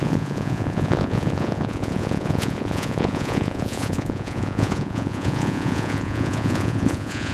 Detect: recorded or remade remade